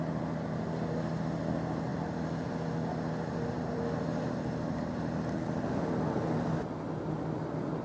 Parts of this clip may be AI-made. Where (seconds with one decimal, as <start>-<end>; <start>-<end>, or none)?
none